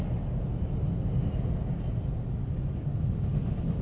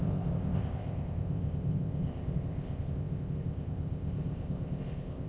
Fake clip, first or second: second